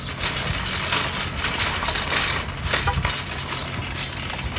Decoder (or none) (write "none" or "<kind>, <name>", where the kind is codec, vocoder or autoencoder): none